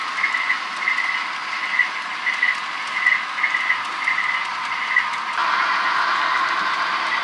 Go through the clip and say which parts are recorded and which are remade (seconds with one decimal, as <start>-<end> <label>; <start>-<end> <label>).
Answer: 0.0-7.2 recorded